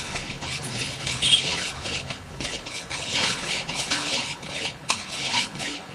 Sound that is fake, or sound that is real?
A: fake